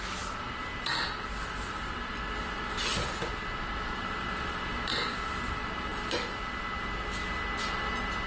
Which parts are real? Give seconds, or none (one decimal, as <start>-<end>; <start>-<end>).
0.0-8.3